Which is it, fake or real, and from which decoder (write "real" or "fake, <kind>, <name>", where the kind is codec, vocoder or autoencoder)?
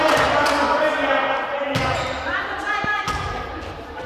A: real